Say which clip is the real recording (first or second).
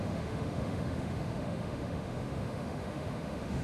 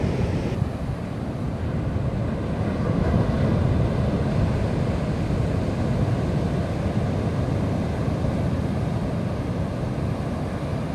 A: second